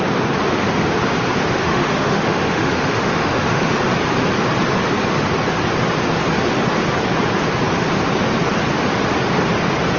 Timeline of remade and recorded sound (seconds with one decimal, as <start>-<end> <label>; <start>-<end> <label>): 0.0-1.6 recorded; 1.6-3.8 remade; 3.8-10.0 recorded